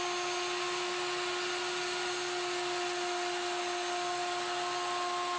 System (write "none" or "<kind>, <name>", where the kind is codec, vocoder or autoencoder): none